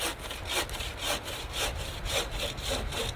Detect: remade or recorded recorded